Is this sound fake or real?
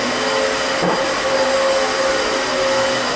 real